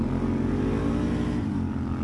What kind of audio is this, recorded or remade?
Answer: recorded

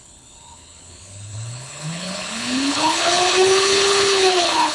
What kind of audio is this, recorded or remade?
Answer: remade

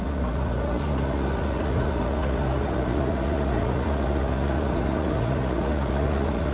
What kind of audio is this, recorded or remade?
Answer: remade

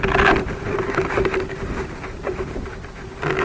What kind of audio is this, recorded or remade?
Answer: recorded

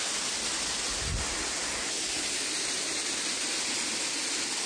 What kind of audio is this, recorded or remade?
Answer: recorded